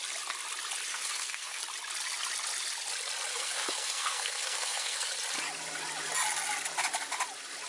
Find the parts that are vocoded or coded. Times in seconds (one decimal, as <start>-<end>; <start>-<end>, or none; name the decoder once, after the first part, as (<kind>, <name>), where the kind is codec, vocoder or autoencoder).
0.9-1.6 (codec, SNAC); 3.3-5.1